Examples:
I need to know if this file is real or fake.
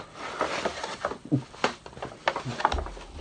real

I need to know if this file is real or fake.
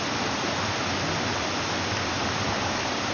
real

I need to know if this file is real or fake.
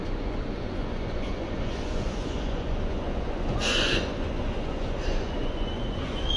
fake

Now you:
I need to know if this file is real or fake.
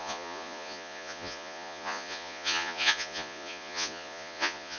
fake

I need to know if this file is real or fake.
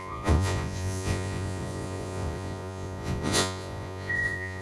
fake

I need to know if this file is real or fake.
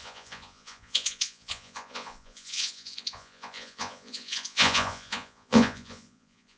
fake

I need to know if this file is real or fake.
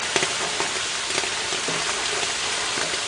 real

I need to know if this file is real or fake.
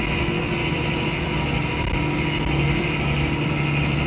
real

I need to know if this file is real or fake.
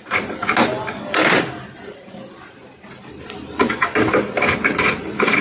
real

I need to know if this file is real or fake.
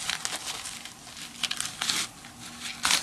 real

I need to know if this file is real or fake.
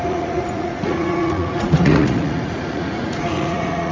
fake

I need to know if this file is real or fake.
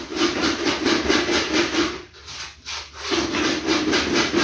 real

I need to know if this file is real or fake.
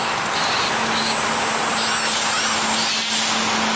real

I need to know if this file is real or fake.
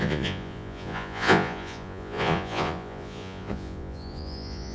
fake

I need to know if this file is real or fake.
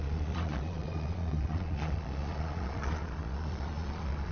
fake